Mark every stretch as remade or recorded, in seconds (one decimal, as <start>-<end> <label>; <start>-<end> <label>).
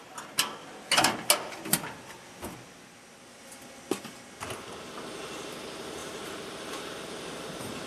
0.0-6.0 recorded; 6.0-7.9 remade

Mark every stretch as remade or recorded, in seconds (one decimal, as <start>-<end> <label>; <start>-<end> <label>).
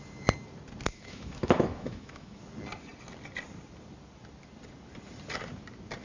0.0-0.9 recorded; 0.9-2.4 remade; 2.4-6.0 recorded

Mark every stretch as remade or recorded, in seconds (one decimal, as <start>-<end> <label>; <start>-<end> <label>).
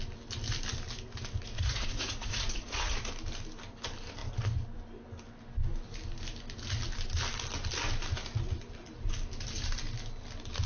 0.0-1.5 recorded; 1.5-3.1 remade; 3.1-10.7 recorded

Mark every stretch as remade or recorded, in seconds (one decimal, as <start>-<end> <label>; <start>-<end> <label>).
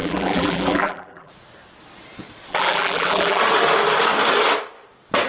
0.0-1.3 remade; 1.3-2.5 recorded; 2.5-3.4 remade; 3.4-5.3 recorded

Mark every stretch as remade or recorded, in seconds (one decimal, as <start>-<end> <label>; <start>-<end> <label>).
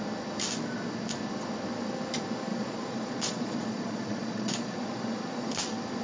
0.0-2.5 recorded; 2.5-5.5 remade; 5.5-6.0 recorded